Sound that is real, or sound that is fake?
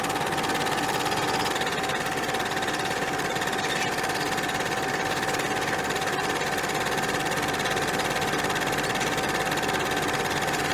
real